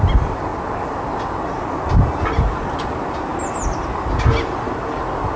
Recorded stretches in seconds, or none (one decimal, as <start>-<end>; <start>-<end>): 0.0-5.4